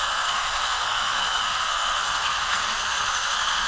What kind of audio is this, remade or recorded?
remade